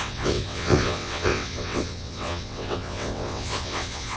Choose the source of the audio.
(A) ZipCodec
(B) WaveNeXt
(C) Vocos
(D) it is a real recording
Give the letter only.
B